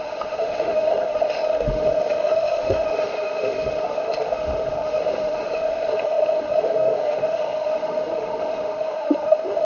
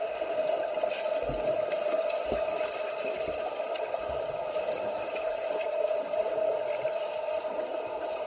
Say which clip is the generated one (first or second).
first